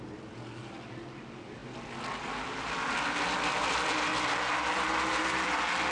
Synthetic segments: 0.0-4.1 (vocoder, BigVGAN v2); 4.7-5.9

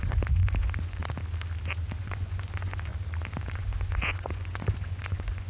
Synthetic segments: 0.0-1.0 (vocoder, Vocos); 2.0-2.9; 3.5-5.5

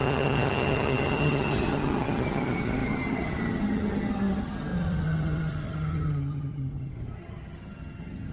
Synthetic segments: 0.0-8.3 (vocoder, HiFi-GAN)

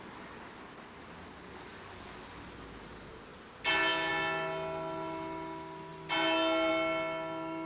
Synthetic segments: none

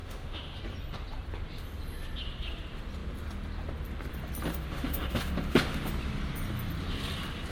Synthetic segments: 0.0-0.6 (autoencoder, DAC-VAE); 4.5-5.9

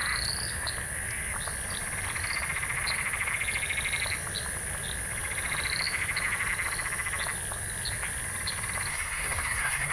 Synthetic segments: 8.9-9.9 (codec, SNAC)

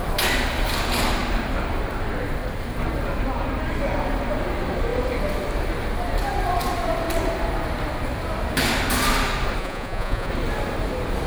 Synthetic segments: 9.6-10.3 (vocoder, Vocos)